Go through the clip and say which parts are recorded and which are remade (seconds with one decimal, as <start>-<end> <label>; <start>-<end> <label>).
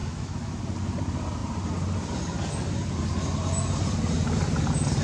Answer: 0.0-0.6 remade; 0.6-5.0 recorded